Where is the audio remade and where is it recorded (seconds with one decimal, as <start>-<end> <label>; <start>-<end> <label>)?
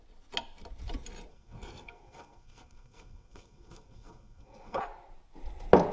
0.0-1.3 recorded; 1.3-4.8 remade; 4.8-5.9 recorded